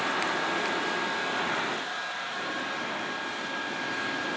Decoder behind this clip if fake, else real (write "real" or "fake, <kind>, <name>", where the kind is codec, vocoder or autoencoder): real